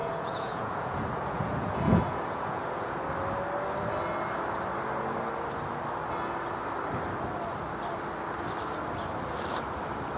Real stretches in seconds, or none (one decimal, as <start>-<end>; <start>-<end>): 3.0-10.2